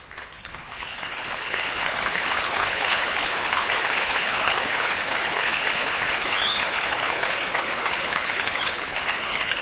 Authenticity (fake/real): fake